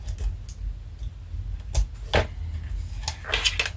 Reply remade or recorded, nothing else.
recorded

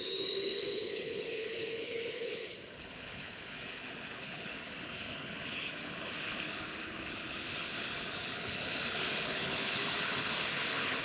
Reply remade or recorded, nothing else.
remade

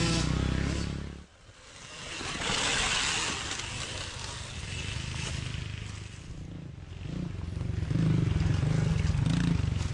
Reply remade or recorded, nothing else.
recorded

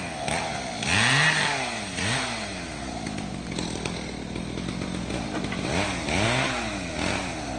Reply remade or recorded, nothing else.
recorded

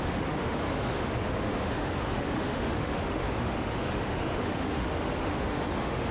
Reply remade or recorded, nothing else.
remade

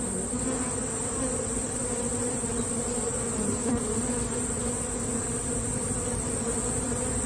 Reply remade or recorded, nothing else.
recorded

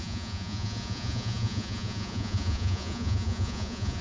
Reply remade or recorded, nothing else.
remade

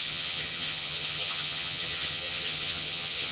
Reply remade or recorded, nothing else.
remade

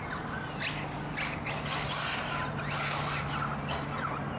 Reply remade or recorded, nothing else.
recorded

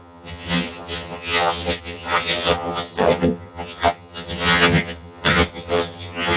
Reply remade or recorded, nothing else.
remade